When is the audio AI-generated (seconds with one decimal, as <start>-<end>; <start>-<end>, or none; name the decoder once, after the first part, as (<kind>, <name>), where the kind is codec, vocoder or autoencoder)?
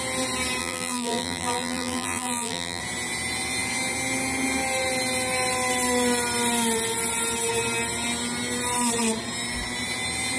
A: 0.6-2.8 (vocoder, BigVGAN v2)